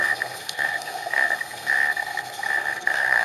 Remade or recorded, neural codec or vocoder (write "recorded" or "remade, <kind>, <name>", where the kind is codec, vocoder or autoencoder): remade, codec, SNAC